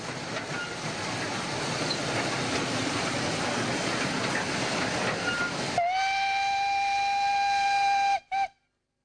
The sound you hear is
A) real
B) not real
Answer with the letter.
A